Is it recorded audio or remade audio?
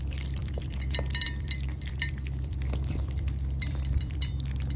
remade